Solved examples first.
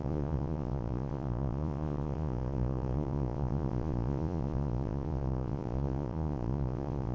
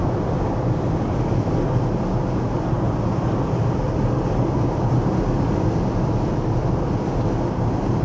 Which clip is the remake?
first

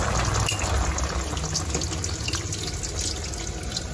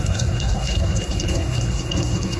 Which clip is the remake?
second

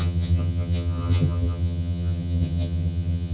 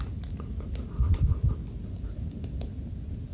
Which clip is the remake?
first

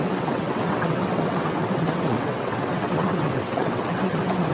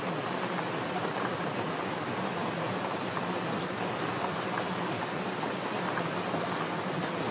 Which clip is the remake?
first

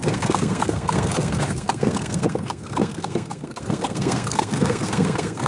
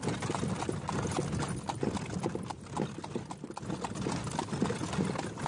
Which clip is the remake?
first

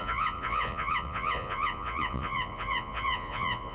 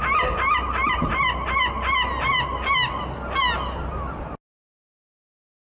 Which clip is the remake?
first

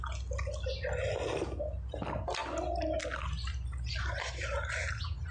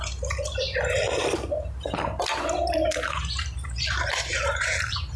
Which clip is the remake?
second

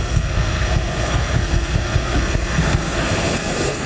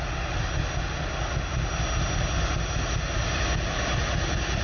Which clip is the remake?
first